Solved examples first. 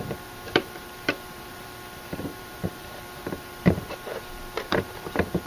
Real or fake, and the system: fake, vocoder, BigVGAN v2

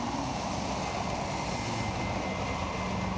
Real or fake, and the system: real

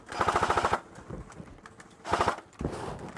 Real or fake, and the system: real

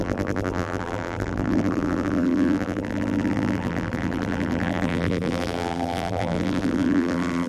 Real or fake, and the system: fake, vocoder, BigVGAN v2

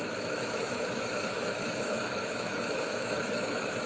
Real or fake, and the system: fake, autoencoder, DAC-VAE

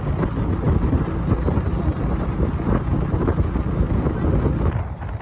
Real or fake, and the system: real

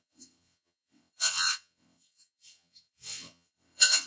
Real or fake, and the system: fake, vocoder, WaveNeXt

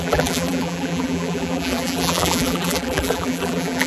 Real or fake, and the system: fake, vocoder, BigVGAN v2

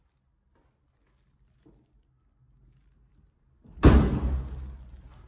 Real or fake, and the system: real